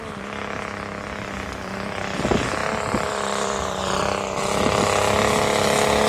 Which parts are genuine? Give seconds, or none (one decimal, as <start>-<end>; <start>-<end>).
0.0-2.6; 4.0-6.1